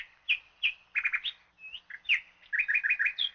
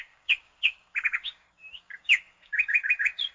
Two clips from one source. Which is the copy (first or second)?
second